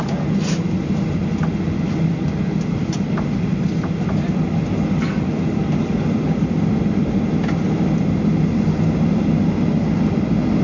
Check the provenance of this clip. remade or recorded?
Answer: recorded